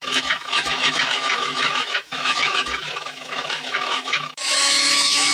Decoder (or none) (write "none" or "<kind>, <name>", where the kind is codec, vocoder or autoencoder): autoencoder, DAC-VAE